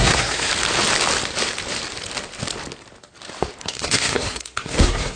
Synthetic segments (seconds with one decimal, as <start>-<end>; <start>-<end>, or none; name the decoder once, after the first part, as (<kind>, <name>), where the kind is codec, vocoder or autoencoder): 0.0-0.5 (codec, SNAC); 3.6-5.2